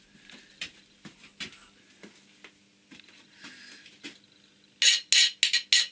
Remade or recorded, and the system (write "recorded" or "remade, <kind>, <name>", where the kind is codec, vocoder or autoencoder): recorded